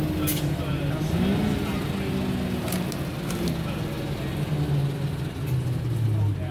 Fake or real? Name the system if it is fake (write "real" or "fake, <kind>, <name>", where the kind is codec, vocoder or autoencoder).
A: real